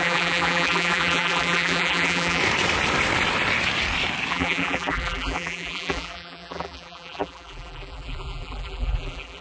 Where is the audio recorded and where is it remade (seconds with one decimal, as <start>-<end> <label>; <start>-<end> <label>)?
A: 0.0-2.4 remade; 2.4-4.3 recorded; 4.3-9.4 remade